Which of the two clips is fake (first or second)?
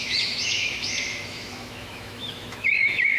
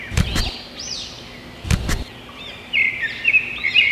first